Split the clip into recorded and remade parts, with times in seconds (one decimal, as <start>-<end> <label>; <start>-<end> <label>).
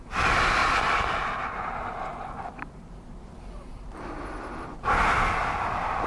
0.0-6.1 recorded